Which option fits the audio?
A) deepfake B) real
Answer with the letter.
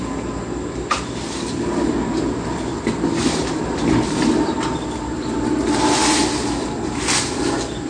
B